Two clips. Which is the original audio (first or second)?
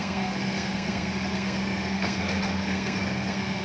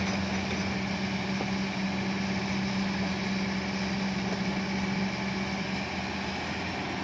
second